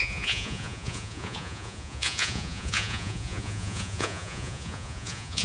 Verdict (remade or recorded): remade